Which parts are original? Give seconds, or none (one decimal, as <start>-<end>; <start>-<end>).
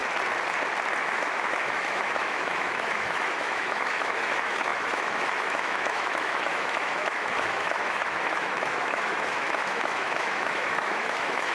0.0-1.0